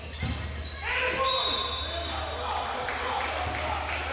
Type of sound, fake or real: real